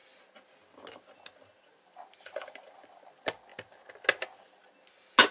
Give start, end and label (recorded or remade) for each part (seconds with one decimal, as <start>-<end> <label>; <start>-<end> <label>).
0.0-5.3 recorded